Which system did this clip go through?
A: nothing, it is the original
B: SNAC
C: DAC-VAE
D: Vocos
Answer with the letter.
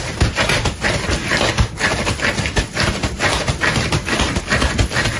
A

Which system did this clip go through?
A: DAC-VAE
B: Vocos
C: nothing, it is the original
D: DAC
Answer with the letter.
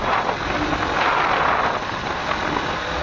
C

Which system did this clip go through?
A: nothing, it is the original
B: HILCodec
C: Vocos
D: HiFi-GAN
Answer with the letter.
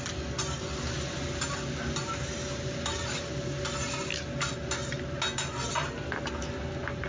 A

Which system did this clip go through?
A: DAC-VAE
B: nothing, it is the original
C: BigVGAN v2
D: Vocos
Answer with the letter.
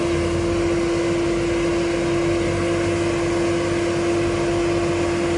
B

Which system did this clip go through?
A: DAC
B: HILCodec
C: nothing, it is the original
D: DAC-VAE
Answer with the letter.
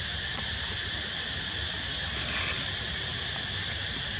C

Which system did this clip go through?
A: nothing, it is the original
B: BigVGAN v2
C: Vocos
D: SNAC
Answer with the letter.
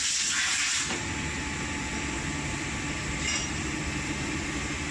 A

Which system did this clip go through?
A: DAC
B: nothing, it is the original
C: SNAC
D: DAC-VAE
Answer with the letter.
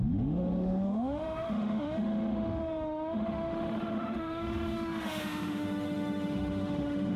D